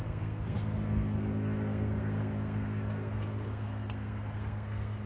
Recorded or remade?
remade